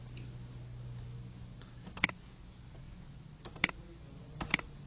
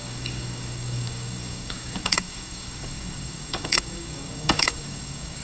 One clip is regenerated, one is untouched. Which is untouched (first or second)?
first